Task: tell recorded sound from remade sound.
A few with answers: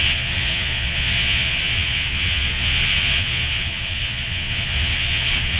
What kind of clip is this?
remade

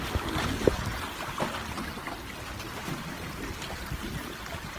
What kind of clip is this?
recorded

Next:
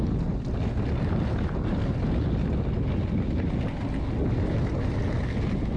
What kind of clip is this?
recorded